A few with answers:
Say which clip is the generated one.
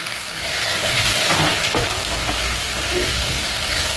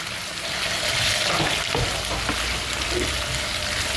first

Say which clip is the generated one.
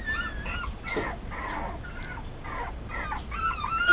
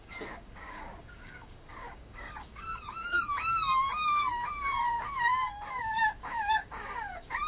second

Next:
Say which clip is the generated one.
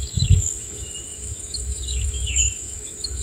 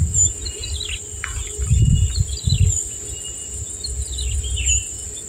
first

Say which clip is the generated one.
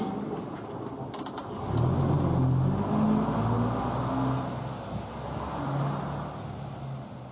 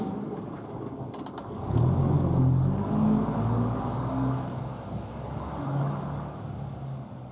second